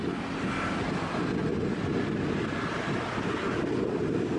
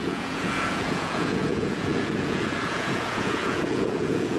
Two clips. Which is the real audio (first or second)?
first